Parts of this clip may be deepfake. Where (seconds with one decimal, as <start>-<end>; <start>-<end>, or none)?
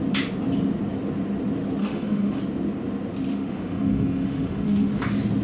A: 1.8-2.4; 3.3-5.0